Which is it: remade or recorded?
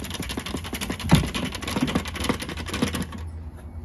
recorded